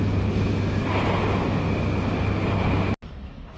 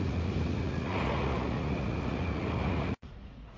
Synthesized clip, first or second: second